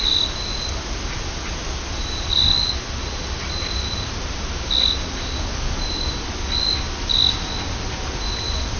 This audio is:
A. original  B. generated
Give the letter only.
A